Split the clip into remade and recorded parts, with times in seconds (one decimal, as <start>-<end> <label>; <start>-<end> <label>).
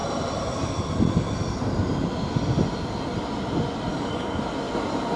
0.0-3.9 recorded; 3.9-4.4 remade; 4.4-5.2 recorded